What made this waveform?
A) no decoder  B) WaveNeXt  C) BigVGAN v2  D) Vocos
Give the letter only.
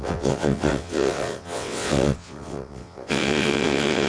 B